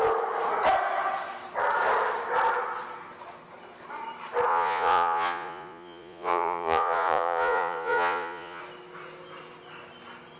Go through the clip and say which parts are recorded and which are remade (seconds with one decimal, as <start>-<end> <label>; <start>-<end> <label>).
0.0-4.5 recorded; 4.5-8.6 remade; 8.6-10.4 recorded

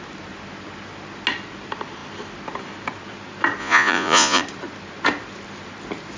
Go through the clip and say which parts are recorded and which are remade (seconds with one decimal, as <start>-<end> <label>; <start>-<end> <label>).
0.0-3.6 recorded; 3.6-4.4 remade; 4.4-6.2 recorded

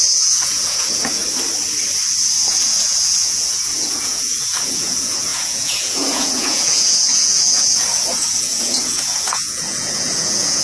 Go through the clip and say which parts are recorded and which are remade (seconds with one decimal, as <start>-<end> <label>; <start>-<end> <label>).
0.0-1.2 remade; 1.2-2.5 recorded; 2.5-10.6 remade

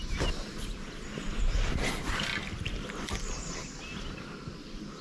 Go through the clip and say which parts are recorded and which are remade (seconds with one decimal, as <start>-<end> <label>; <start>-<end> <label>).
0.0-5.0 recorded

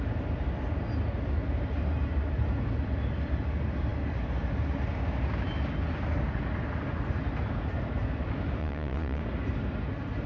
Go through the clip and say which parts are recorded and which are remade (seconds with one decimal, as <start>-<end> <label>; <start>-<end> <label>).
0.0-8.6 recorded; 8.6-9.2 remade; 9.2-10.3 recorded